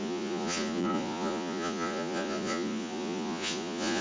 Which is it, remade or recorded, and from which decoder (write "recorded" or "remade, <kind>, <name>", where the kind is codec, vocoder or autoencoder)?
remade, vocoder, Vocos